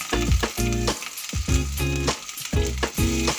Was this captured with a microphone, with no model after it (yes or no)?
yes